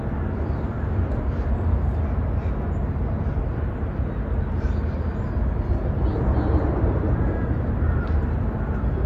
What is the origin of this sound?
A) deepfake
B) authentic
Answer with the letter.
B